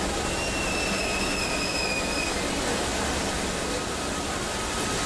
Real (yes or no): yes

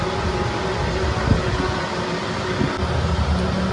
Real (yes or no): yes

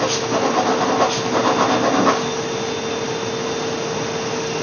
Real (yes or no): yes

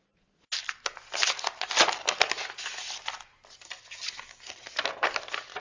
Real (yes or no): yes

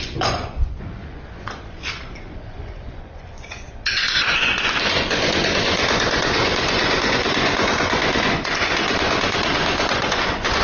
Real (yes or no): no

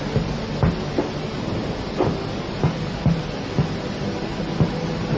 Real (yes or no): yes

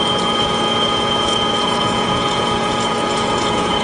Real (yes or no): no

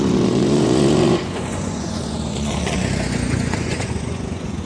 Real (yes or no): no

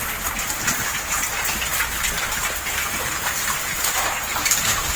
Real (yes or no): yes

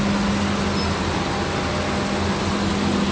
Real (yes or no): yes